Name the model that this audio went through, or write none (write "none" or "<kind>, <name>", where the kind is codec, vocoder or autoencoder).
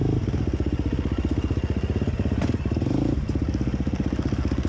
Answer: none